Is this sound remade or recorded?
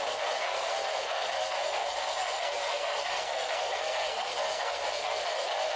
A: remade